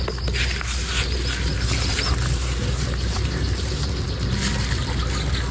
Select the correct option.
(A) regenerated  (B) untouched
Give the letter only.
B